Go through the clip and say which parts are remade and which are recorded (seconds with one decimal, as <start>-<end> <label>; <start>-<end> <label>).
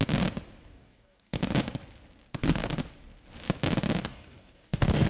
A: 0.0-0.7 recorded; 0.7-1.4 remade; 1.4-2.3 recorded; 2.3-2.8 remade; 2.8-4.0 recorded; 4.0-5.1 remade